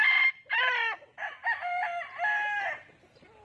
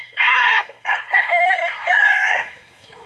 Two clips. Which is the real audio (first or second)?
first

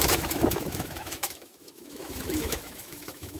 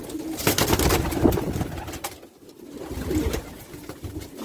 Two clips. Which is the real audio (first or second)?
second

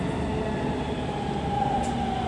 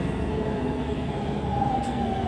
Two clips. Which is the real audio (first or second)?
first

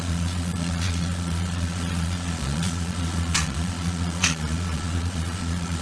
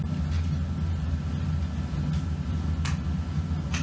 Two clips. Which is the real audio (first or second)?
second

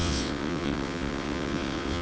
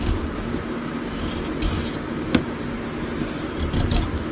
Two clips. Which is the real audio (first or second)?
second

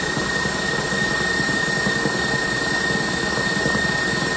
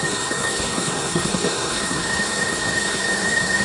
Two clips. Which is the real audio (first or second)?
first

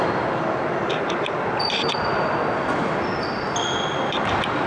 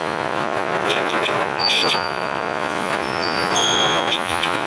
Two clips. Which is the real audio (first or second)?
first